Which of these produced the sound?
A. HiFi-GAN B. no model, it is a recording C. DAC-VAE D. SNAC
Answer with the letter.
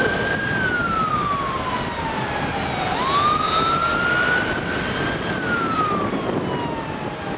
B